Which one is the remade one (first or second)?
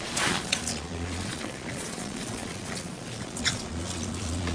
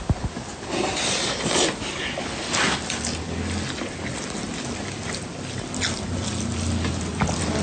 first